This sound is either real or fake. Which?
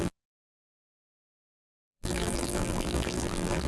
fake